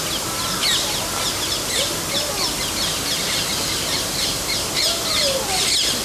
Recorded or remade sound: recorded